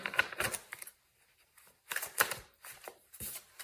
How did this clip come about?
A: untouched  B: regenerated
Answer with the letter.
B